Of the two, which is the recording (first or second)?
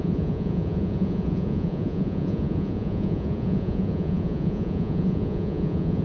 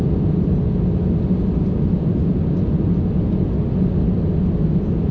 second